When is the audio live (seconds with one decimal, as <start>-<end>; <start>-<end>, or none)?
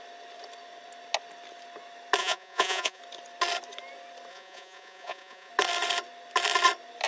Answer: 0.0-2.2; 3.0-4.3; 5.5-7.1